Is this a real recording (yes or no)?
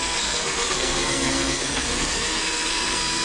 no